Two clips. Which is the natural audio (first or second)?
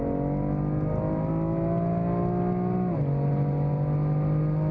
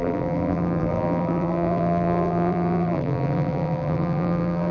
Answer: first